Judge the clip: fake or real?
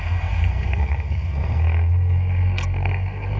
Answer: fake